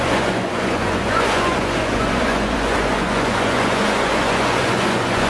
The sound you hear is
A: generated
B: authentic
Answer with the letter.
A